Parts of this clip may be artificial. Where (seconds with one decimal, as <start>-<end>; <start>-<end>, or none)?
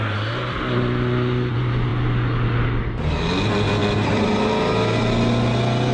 3.8-4.4